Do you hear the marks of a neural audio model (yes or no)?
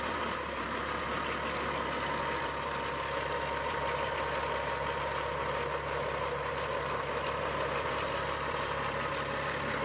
yes